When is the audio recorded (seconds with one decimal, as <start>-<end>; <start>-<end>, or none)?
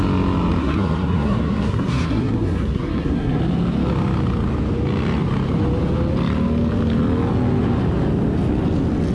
0.0-0.6; 3.4-9.1